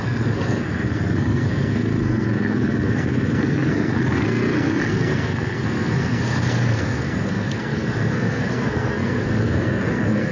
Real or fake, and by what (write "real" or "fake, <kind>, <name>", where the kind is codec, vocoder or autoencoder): fake, codec, SNAC